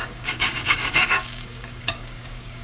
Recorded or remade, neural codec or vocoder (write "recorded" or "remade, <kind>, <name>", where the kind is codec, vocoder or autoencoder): remade, codec, DAC